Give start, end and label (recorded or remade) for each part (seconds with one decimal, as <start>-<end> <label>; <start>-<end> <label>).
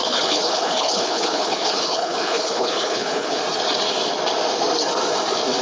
0.0-3.4 remade; 3.4-5.6 recorded